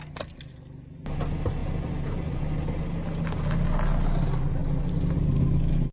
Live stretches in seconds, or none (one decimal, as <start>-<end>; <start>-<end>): 0.0-5.9